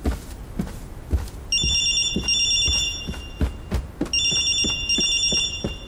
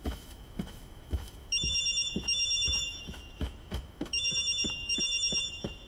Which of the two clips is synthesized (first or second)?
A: second